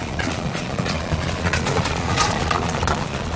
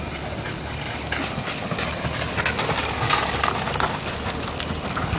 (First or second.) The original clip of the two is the second